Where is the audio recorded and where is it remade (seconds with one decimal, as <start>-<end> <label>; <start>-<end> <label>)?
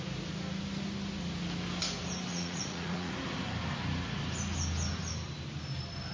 0.0-2.3 recorded; 2.3-3.1 remade; 3.1-6.1 recorded